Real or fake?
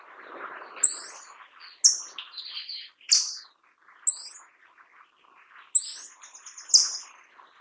real